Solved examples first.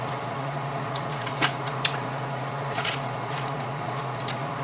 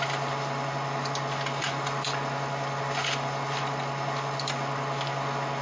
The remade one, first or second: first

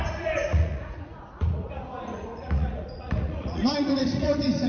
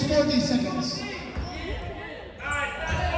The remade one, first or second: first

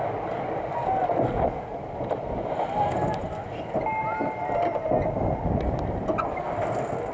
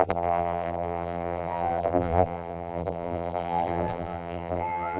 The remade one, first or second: second